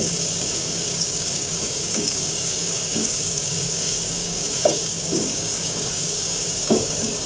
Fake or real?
fake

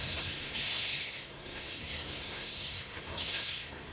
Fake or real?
fake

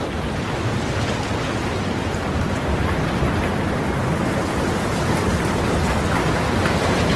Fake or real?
real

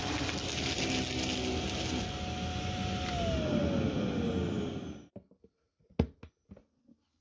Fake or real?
real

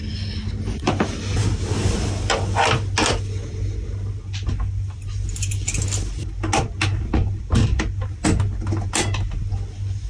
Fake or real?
real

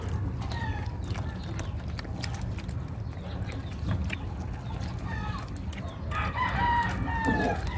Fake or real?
real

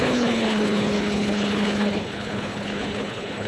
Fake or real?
fake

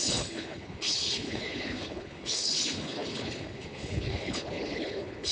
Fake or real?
fake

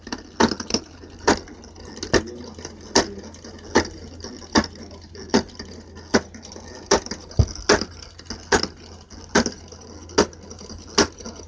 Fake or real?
real